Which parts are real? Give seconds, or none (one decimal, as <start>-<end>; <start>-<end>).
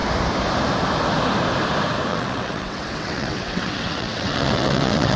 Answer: 0.0-2.1